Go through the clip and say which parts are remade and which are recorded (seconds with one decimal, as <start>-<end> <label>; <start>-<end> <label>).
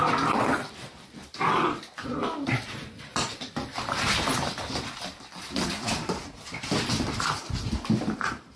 0.0-8.6 remade